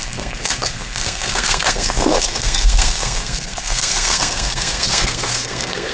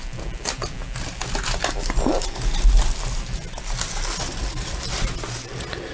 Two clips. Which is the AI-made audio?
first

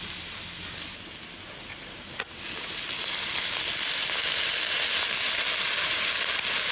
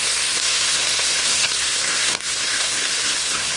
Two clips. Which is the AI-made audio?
second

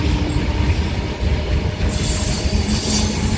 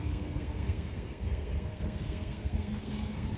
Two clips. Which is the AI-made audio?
second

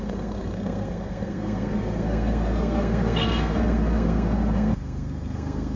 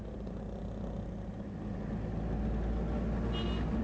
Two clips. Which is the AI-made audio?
first